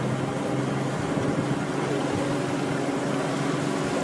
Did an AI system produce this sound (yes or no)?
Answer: no